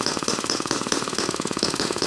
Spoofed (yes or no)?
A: yes